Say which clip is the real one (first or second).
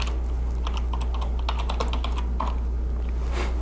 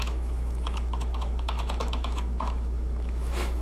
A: first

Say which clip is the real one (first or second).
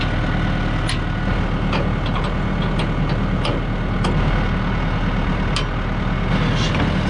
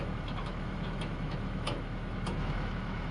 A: first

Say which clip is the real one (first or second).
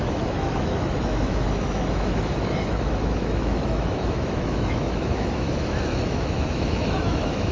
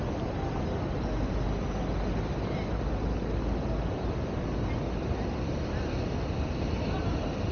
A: second